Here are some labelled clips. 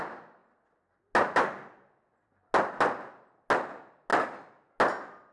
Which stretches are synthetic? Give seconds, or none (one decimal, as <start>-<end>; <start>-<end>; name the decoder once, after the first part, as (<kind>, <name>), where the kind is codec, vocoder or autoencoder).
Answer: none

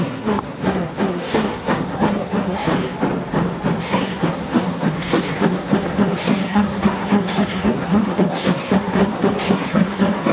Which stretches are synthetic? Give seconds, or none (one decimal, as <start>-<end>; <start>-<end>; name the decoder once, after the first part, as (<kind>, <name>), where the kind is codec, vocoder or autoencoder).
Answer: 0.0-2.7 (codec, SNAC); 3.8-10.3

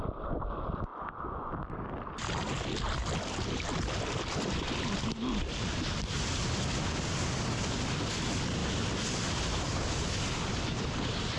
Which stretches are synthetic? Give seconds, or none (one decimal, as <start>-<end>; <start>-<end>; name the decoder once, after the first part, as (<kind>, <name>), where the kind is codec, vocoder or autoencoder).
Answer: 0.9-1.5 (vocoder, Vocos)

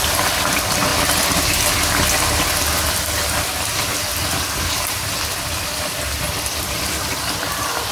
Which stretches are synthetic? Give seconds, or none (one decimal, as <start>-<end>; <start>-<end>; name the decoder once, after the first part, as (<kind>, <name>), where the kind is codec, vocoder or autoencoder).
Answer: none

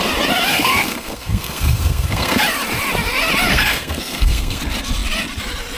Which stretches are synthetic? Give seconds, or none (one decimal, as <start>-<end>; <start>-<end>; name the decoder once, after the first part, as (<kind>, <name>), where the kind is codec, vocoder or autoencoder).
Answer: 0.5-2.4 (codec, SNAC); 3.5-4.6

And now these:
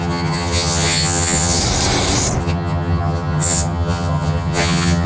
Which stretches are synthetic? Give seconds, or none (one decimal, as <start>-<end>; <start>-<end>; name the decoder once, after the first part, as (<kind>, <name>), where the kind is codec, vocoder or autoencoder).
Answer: 0.0-1.6 (vocoder, HiFi-GAN); 2.4-5.1

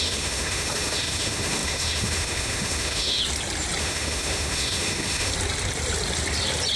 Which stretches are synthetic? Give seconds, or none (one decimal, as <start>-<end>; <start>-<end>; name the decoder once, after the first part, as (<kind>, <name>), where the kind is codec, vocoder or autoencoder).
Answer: 0.0-3.2 (autoencoder, DAC-VAE); 3.8-5.3

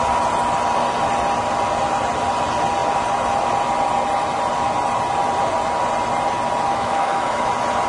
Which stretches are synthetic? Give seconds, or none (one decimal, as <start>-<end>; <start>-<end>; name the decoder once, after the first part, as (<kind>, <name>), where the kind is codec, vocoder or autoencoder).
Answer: 6.7-7.5 (autoencoder, DAC-VAE)